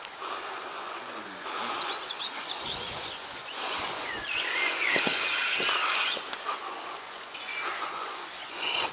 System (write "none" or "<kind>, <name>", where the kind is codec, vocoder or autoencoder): vocoder, Vocos